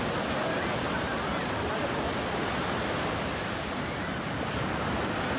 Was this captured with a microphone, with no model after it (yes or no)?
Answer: yes